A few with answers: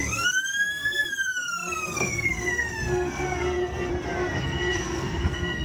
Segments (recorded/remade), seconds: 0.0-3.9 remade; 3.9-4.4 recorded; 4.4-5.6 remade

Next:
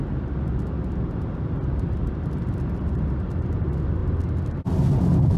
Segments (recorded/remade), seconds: 0.0-5.4 recorded